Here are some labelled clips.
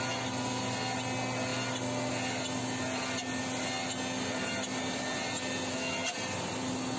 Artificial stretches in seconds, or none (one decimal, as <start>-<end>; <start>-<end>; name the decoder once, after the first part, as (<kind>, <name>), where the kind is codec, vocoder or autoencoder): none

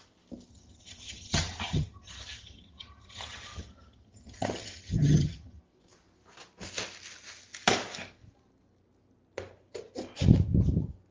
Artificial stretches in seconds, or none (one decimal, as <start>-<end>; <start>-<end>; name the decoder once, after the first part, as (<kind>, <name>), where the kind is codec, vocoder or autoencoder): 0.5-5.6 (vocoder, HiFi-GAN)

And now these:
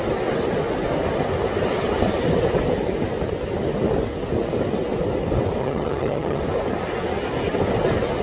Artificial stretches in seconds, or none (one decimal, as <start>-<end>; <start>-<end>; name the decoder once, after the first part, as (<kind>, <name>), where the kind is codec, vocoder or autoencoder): 5.6-6.4 (vocoder, HiFi-GAN)